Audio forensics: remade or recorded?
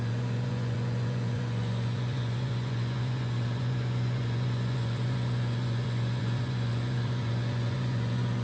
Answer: remade